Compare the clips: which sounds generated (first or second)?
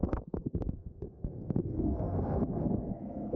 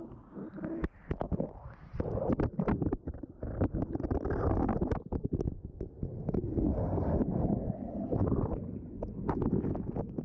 first